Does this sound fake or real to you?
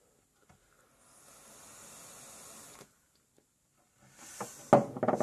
real